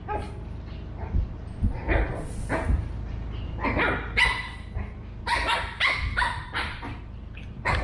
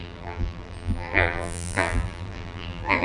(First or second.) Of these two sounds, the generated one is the second